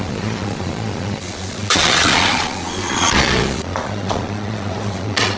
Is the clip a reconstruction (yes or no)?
yes